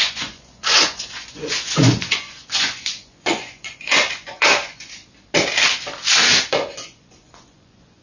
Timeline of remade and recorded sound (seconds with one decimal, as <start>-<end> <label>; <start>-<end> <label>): 0.0-5.0 remade; 5.0-6.5 recorded; 6.5-8.0 remade